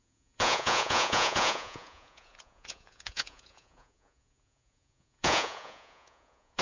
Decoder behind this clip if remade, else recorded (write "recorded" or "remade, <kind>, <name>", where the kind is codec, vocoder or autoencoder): remade, vocoder, Vocos